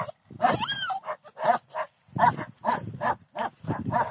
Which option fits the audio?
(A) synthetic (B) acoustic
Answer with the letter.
A